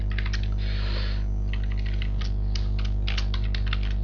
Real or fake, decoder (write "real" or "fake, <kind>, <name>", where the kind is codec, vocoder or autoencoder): real